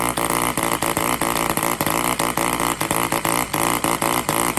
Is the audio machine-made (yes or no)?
no